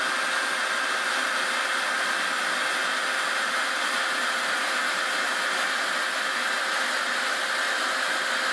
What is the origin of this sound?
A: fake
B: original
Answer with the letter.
B